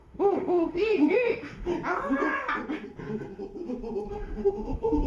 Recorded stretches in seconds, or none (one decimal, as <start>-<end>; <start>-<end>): 1.7-4.1